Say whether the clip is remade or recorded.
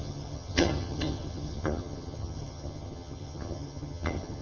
remade